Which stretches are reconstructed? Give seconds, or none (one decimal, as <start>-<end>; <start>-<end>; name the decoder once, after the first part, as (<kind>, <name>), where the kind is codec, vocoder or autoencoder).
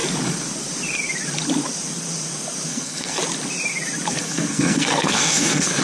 2.7-3.2 (codec, SNAC); 4.1-5.8